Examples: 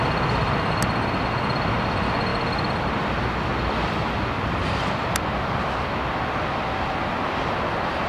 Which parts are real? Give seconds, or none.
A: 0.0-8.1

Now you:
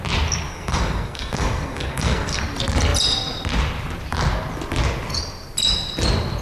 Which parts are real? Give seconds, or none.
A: 0.0-0.5; 2.4-6.4

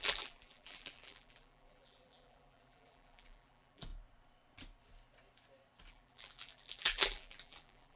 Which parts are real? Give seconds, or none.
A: 3.9-5.9

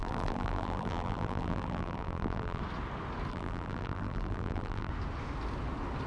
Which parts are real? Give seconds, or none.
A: 2.6-3.3; 4.9-6.1

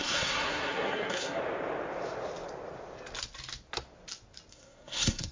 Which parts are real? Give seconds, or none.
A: 1.4-4.5

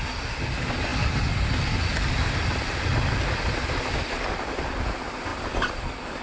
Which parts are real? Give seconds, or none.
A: 0.0-6.2

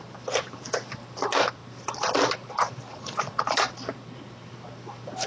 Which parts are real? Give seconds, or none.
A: 0.0-2.9; 3.6-5.3

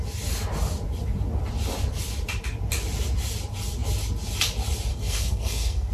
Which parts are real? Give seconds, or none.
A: 0.0-4.9